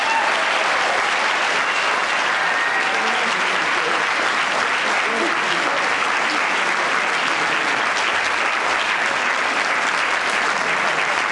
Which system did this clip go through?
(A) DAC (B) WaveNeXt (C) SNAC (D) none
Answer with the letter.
D